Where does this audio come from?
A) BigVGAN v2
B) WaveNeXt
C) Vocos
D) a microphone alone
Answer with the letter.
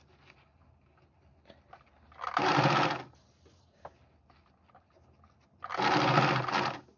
D